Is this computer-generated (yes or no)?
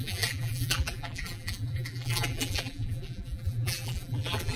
yes